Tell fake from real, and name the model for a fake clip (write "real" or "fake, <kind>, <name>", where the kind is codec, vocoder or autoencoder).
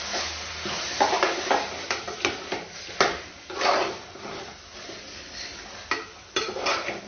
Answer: real